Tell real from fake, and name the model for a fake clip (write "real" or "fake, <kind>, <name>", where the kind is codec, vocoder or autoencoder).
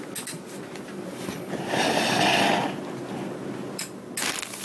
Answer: real